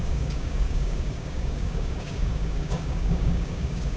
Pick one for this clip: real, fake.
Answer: fake